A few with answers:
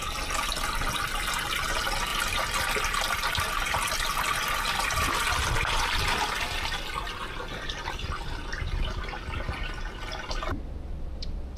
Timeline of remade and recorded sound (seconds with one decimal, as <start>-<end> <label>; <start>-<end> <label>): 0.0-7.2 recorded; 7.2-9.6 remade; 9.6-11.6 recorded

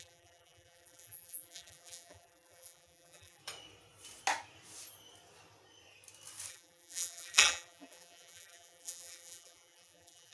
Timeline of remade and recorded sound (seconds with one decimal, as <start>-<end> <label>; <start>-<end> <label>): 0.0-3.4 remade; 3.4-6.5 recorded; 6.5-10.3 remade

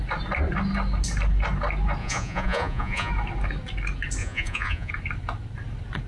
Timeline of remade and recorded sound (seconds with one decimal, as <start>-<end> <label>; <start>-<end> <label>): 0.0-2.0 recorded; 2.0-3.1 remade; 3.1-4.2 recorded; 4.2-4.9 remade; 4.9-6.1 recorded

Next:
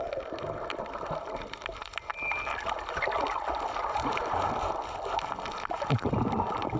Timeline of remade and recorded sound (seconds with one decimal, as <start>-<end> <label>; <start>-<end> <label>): 0.0-6.8 recorded